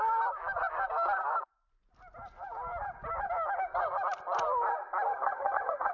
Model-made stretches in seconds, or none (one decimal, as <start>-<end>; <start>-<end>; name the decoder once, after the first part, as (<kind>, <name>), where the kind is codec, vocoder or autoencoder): 5.1-5.9 (vocoder, HiFi-GAN)